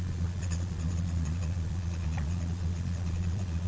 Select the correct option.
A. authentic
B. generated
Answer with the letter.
B